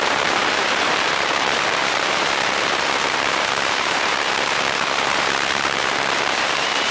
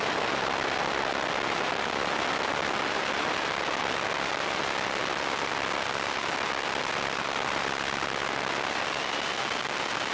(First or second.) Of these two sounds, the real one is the second